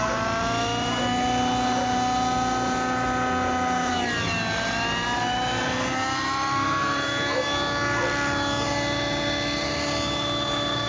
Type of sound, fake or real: real